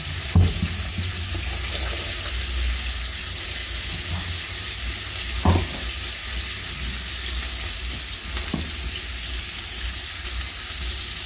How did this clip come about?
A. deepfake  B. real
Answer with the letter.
B